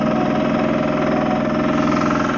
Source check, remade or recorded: recorded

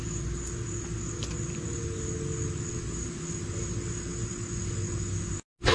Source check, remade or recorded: recorded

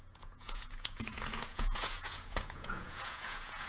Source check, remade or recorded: remade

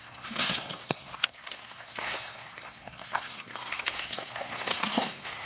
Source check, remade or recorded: remade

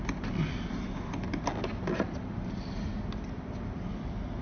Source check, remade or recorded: recorded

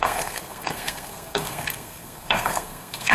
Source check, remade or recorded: remade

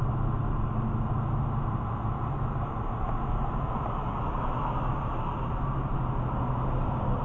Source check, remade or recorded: recorded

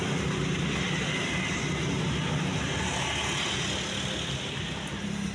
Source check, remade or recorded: recorded